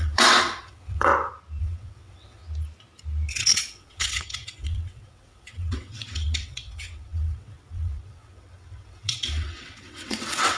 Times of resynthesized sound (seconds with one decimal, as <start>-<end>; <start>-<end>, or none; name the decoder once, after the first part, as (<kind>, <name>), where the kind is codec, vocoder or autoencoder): 0.0-1.1 (vocoder, WaveNeXt); 1.6-2.4; 3.3-10.6